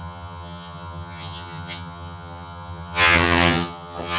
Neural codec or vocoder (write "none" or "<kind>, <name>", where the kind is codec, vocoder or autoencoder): vocoder, HiFi-GAN